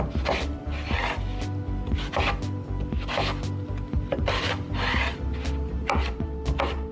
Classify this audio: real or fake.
real